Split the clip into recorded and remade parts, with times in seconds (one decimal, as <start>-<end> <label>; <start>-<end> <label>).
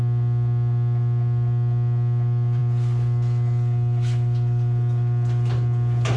0.0-6.2 recorded